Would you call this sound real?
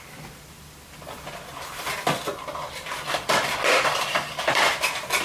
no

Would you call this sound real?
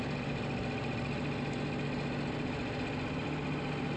yes